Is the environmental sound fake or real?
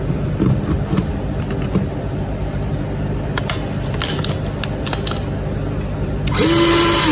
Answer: real